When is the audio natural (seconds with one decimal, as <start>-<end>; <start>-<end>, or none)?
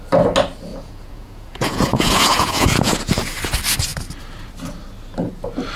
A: 0.0-0.7; 3.1-5.8